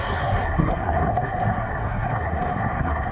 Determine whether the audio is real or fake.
fake